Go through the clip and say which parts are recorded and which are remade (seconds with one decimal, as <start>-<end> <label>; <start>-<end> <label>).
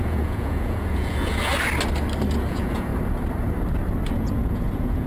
0.0-1.5 remade; 1.5-2.5 recorded; 2.5-2.9 remade; 2.9-4.1 recorded; 4.1-5.1 remade